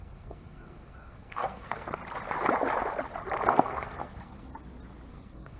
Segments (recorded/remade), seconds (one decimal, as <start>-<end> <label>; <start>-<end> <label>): 0.0-2.0 remade; 2.0-3.5 recorded; 3.5-4.5 remade; 4.5-5.1 recorded; 5.1-5.6 remade